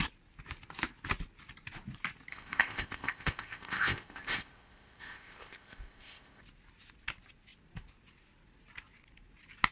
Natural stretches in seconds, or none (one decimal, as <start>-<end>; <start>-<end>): 0.0-2.3; 6.4-9.7